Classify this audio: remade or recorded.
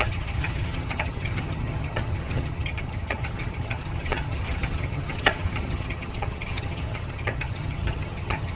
remade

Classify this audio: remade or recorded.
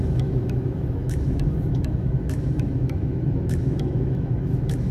remade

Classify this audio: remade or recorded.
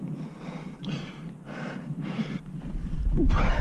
remade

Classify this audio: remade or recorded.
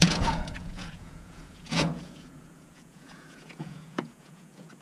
remade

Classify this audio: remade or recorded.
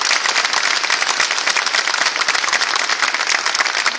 recorded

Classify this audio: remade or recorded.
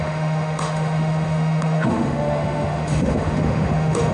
remade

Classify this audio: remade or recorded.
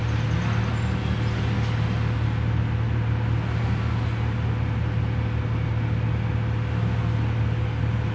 recorded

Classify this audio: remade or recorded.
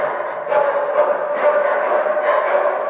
recorded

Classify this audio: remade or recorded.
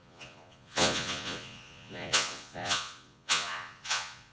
remade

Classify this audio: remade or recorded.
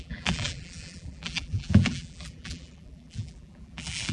remade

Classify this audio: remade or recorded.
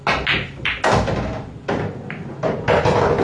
recorded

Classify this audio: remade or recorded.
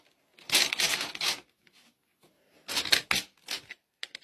recorded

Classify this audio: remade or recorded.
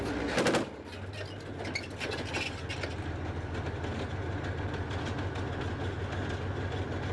recorded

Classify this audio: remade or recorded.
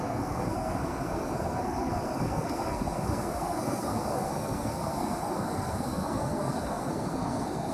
remade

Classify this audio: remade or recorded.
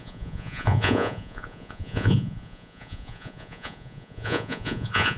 remade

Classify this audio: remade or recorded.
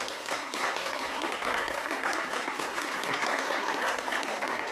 remade